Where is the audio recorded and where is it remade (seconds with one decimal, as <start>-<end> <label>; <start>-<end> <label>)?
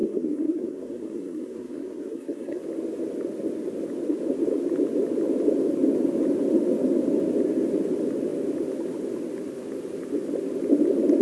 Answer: 0.0-2.6 remade; 2.6-11.2 recorded